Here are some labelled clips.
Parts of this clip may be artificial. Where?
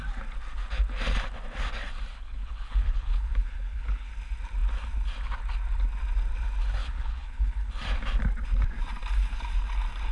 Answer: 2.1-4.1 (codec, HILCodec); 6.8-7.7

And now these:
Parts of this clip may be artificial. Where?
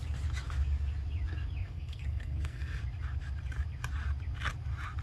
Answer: 1.6-2.8 (codec, SNAC)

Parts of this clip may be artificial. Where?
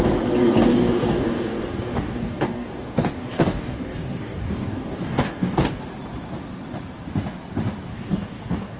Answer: 0.7-5.8 (codec, DAC); 7.9-8.8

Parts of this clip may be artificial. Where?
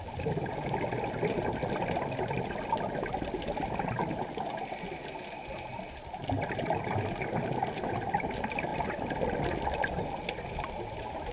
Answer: none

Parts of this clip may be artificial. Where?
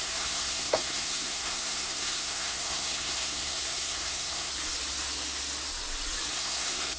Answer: 0.0-4.5 (codec, SNAC); 6.3-7.0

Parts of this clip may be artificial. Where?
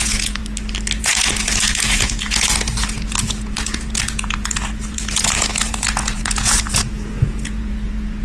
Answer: 0.0-0.4 (vocoder, Vocos); 1.0-8.2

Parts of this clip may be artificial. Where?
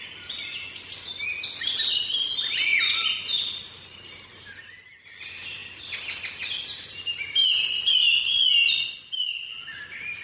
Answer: none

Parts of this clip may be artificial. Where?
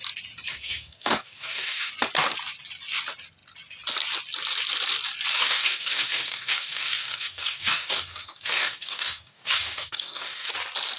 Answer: 0.5-1.9 (codec, DAC); 5.3-10.5